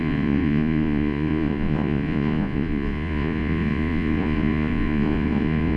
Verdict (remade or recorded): remade